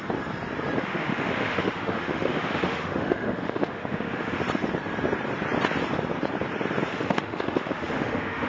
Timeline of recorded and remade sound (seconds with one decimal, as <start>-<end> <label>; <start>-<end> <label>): 0.0-0.8 recorded; 0.8-4.4 remade; 4.4-6.9 recorded; 6.9-8.5 remade